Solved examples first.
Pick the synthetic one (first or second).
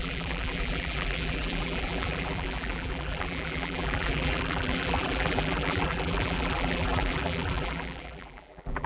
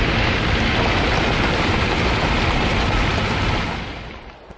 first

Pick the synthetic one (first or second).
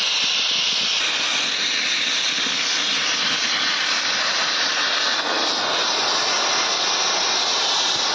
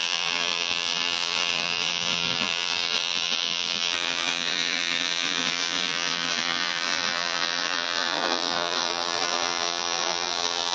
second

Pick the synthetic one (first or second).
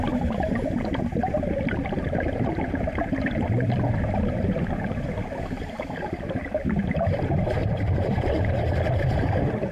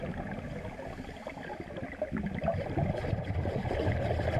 first